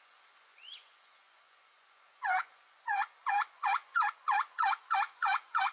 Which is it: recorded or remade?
remade